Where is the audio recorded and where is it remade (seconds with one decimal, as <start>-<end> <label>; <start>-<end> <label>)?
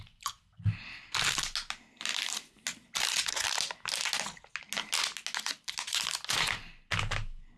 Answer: 0.0-7.6 recorded